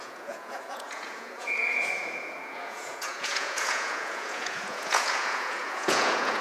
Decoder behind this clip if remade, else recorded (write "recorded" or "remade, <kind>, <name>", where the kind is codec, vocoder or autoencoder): remade, vocoder, Vocos